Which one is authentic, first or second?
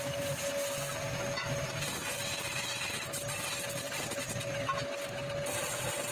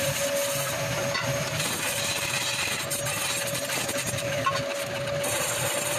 first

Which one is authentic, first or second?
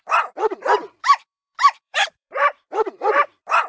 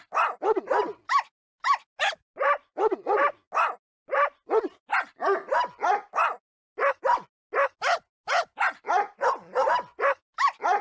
second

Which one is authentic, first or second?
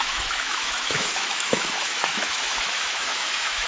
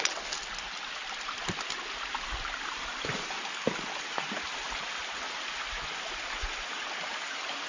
second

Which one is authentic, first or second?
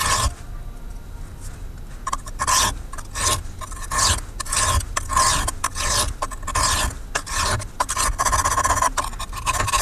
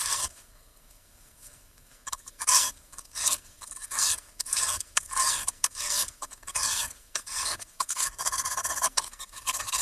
first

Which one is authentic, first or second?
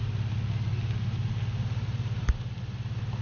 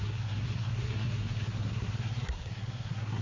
first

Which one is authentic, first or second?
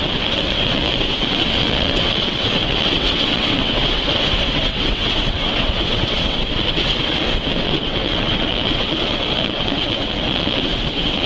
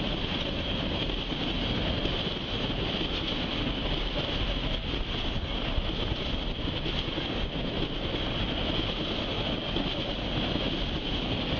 second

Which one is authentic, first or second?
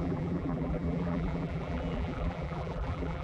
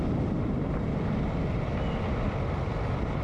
second